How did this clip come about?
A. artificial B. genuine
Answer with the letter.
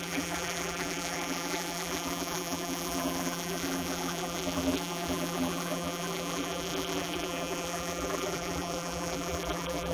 A